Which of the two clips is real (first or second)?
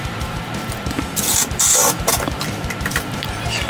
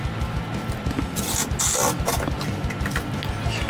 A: second